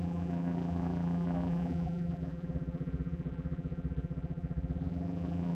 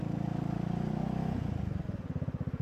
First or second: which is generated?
first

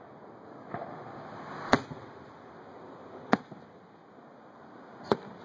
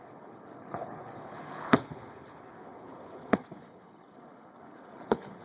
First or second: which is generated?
second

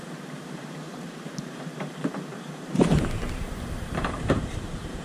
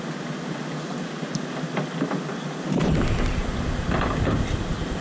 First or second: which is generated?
first